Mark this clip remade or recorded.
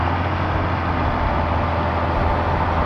recorded